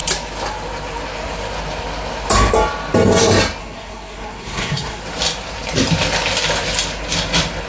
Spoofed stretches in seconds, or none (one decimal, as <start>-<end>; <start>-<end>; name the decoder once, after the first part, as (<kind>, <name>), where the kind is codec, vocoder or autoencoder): 3.6-5.0 (codec, SNAC)